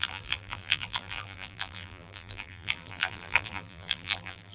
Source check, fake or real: fake